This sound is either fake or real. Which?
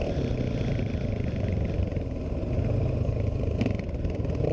real